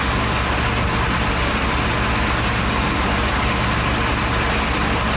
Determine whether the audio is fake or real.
real